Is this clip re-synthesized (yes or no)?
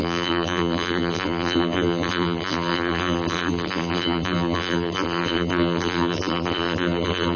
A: yes